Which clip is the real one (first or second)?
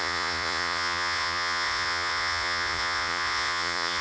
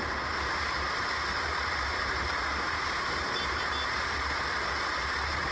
second